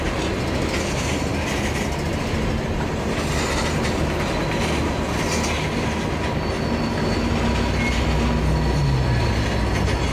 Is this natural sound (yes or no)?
yes